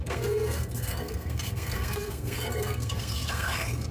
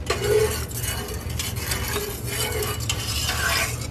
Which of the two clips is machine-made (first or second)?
first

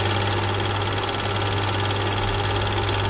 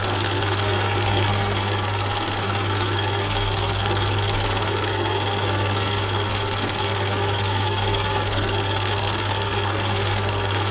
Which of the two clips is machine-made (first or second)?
second